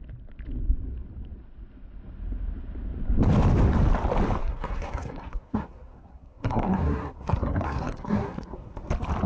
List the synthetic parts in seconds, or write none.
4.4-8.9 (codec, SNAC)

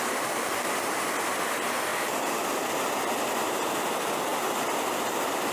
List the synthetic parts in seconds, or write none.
1.9-3.2 (vocoder, BigVGAN v2); 4.3-5.0

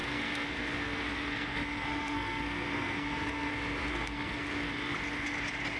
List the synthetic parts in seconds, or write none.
0.0-3.5 (codec, SNAC); 3.9-4.7

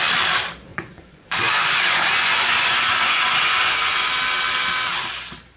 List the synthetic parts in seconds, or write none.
0.7-4.1 (vocoder, Vocos)